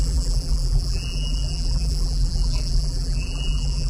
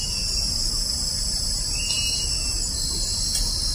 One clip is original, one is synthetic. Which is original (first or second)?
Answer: second